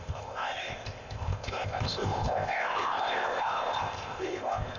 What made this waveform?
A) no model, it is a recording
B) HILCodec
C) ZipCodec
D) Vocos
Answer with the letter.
C